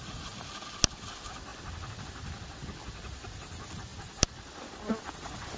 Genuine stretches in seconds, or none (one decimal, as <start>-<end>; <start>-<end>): 0.0-5.6